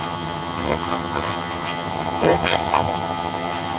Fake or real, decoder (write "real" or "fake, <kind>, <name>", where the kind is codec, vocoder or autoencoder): fake, vocoder, HiFi-GAN